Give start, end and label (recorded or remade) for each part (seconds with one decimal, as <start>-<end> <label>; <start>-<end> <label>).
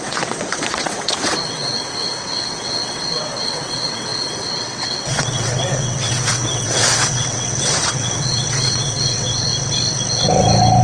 0.0-9.5 remade; 9.5-10.8 recorded